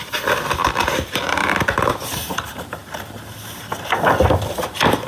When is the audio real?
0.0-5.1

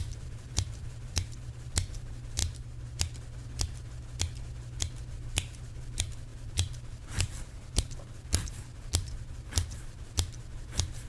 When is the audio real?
2.4-5.1

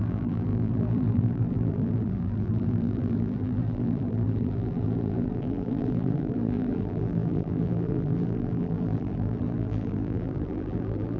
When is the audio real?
none

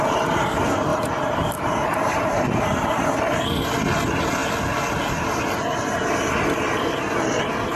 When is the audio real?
0.0-0.9; 2.5-7.8